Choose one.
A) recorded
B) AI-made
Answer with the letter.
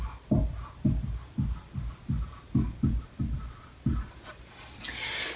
A